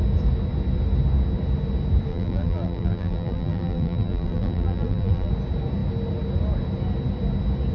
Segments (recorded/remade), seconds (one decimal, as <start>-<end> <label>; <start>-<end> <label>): 0.0-2.1 recorded; 2.1-5.3 remade; 5.3-7.7 recorded